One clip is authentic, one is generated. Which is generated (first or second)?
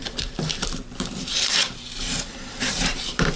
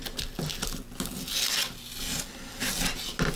first